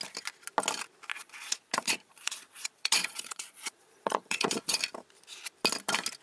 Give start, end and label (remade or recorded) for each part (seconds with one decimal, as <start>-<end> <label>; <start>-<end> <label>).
0.0-1.1 recorded; 1.1-4.8 remade; 4.8-6.2 recorded